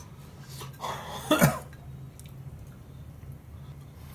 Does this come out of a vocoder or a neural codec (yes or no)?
no